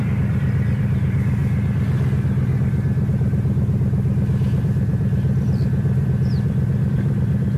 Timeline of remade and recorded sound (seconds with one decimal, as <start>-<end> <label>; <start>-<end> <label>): 0.0-1.4 remade; 1.4-4.6 recorded; 4.6-7.6 remade